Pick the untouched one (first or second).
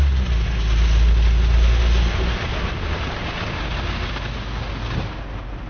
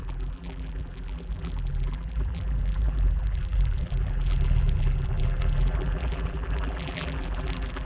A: first